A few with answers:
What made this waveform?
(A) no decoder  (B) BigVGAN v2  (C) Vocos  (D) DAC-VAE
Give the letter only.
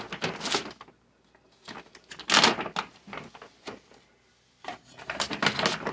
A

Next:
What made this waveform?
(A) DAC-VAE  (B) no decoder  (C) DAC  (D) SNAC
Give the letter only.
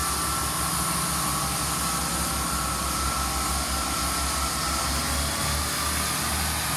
B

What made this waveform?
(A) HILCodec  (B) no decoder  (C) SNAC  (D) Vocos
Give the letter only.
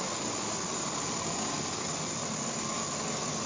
B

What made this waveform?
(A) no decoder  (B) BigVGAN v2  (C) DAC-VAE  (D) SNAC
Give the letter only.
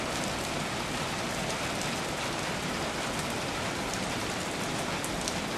A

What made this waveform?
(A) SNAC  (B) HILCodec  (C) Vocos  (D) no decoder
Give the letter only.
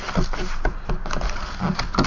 D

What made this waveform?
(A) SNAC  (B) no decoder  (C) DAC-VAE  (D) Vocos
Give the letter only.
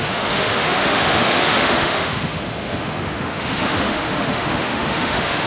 C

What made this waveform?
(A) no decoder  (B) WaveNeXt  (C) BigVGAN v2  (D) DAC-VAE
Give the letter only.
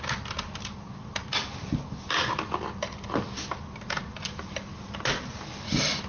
A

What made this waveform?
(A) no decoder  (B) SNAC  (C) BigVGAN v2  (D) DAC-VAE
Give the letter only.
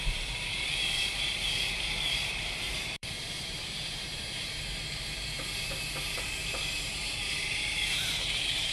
C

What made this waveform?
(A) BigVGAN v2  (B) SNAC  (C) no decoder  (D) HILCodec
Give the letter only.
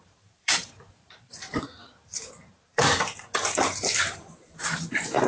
A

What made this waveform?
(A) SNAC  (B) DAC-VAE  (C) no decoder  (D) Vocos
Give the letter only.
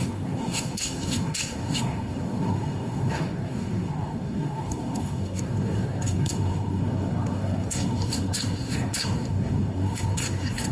A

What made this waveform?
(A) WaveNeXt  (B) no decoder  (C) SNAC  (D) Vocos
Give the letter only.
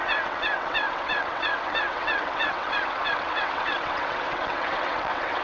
A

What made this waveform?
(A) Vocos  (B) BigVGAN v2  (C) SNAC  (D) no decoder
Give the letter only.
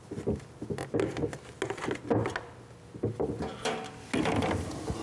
D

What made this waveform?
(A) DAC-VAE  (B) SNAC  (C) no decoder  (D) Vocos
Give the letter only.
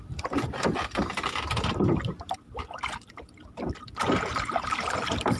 C